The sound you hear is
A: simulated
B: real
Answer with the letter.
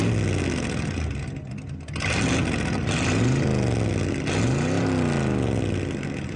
B